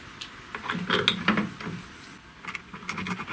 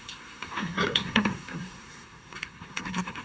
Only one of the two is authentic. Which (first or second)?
first